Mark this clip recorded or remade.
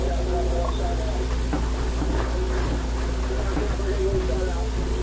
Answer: recorded